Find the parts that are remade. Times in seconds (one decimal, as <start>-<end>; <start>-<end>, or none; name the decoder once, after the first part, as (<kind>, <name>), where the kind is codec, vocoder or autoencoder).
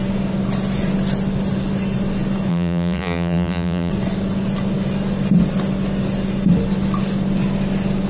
2.5-3.9 (vocoder, BigVGAN v2)